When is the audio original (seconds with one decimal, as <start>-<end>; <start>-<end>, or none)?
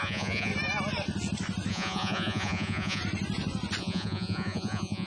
0.5-1.7; 3.0-3.8